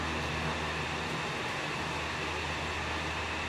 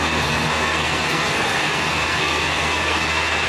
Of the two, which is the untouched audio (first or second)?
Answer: first